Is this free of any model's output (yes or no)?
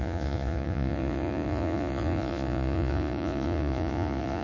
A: no